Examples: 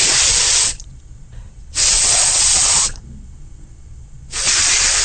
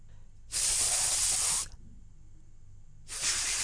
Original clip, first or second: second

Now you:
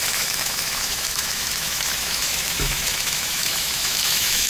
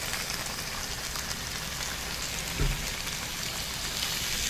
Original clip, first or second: second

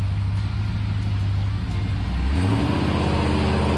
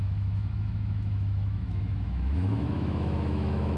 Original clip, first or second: first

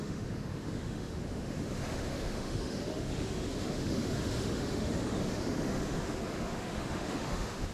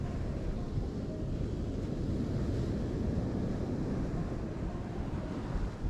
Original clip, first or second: second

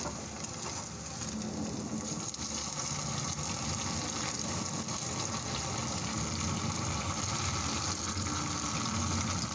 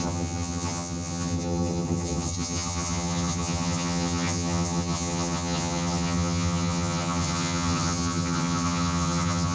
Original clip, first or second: first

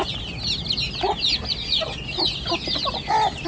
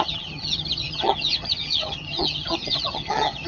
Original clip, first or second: first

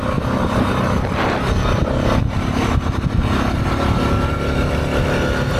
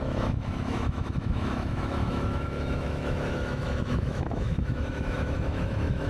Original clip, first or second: first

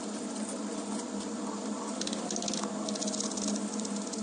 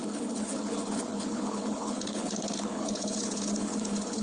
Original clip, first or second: first